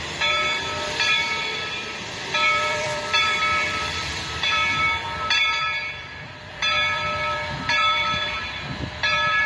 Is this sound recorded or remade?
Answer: remade